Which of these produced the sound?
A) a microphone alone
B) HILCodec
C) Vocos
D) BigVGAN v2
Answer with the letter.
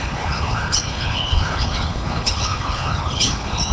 B